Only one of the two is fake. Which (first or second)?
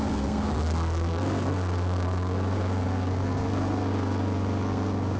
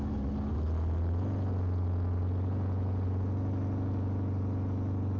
first